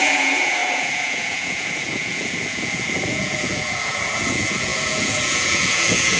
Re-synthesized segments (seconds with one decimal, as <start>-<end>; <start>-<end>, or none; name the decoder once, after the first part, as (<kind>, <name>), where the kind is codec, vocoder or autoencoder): 0.0-6.2 (vocoder, Vocos)